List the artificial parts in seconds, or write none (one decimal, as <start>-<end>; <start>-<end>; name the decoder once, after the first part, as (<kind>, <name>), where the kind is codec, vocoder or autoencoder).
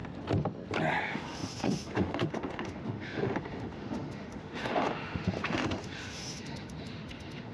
1.0-7.5 (autoencoder, DAC-VAE)